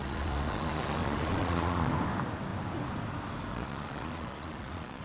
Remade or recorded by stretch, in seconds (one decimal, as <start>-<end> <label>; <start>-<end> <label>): 0.0-1.9 remade; 1.9-3.5 recorded; 3.5-5.0 remade